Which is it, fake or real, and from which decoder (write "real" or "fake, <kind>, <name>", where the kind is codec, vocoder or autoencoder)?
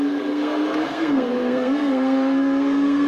fake, codec, SNAC